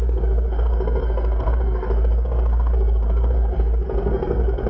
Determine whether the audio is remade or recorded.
remade